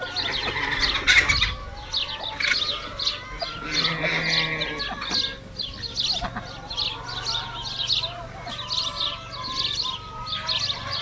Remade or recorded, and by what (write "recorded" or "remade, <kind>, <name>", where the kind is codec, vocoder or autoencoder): recorded